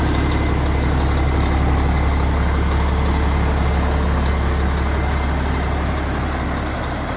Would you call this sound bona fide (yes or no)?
yes